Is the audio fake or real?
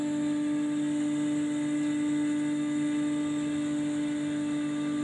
real